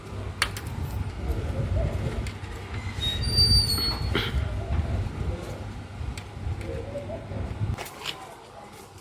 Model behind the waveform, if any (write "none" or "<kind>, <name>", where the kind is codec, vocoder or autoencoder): none